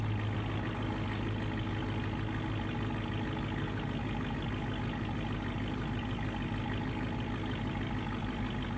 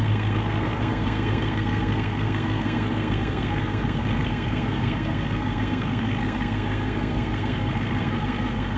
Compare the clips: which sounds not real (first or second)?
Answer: second